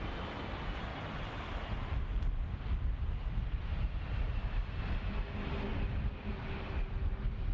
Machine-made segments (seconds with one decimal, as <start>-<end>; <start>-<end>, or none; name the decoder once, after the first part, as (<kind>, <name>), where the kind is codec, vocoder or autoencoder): 5.7-6.3 (vocoder, BigVGAN v2)